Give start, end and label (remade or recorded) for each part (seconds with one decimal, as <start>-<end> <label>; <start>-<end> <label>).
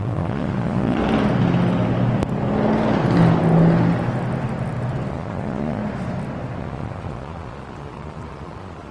0.0-1.0 remade; 1.0-5.1 recorded; 5.1-5.8 remade; 5.8-6.6 recorded; 6.6-8.9 remade